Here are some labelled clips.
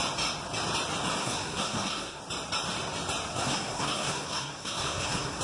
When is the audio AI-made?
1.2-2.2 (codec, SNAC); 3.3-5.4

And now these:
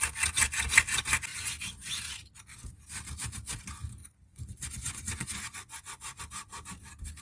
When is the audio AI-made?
1.3-2.0 (vocoder, Vocos); 4.0-6.2

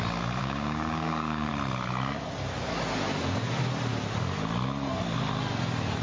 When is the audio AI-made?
0.4-1.5 (codec, DAC)

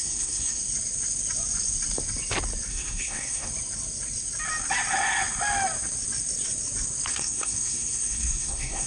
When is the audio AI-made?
0.0-0.6 (codec, SNAC); 2.7-3.5; 7.1-8.9

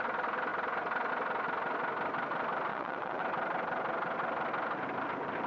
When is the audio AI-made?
2.7-3.2 (vocoder, Vocos)

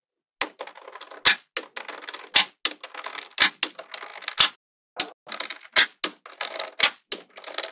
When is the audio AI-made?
none